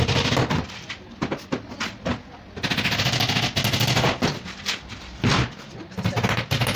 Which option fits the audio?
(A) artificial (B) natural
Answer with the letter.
B